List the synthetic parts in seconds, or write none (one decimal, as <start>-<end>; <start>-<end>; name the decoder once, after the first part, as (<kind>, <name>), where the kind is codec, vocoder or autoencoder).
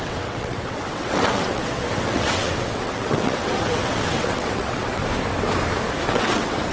0.0-5.0 (vocoder, WaveNeXt); 6.1-6.7